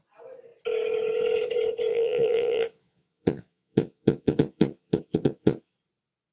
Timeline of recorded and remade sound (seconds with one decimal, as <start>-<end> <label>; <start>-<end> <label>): 0.0-1.9 recorded; 1.9-5.7 remade; 5.7-6.3 recorded